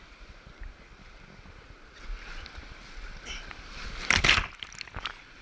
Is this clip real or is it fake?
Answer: real